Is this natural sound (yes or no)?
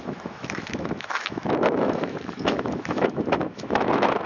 no